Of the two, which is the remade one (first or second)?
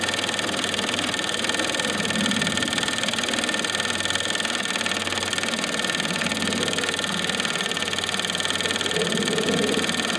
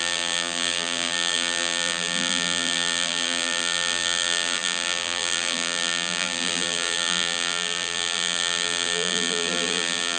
second